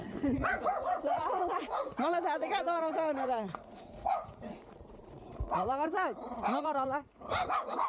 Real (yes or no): no